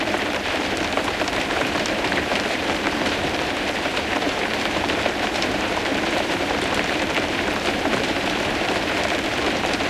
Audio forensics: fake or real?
fake